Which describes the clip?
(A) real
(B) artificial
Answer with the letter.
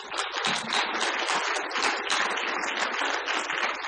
A